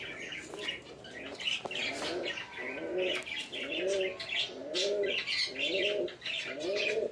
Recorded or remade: recorded